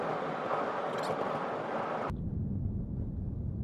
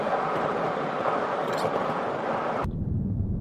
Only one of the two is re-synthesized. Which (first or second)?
second